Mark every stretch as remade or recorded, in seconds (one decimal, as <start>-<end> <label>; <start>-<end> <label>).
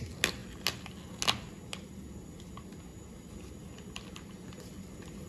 0.0-5.3 recorded